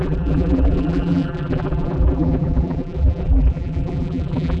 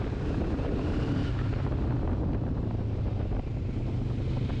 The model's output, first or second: first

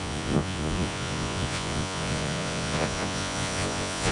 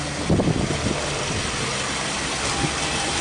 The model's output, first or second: first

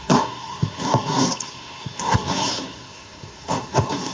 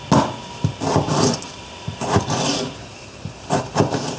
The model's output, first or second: first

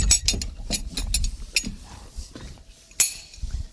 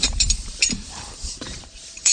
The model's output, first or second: second